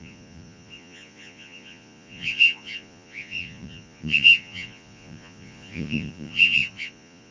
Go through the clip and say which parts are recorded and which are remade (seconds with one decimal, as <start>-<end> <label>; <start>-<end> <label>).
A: 0.0-7.3 remade